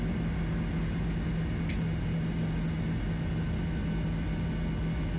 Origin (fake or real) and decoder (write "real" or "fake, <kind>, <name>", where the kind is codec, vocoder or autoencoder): real